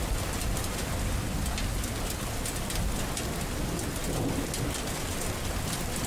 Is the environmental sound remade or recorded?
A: recorded